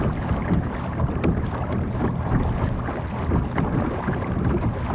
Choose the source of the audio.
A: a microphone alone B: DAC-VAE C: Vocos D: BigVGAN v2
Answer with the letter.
A